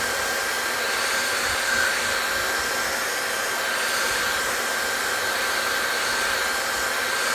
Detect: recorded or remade recorded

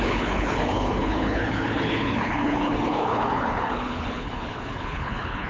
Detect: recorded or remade remade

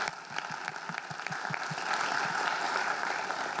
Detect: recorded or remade recorded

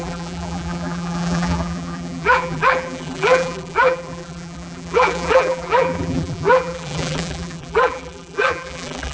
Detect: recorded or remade remade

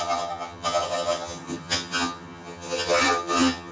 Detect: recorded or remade remade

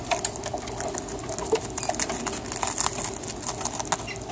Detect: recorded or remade recorded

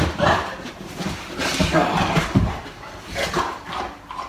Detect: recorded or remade recorded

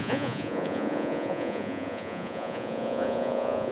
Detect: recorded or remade remade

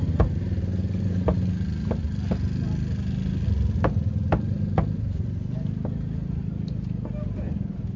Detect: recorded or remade recorded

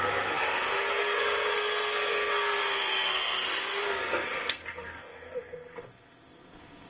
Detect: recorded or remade remade